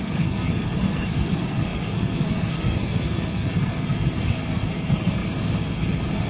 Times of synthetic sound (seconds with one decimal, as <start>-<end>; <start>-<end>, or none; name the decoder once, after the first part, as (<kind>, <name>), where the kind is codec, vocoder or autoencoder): 0.0-6.3 (codec, SNAC)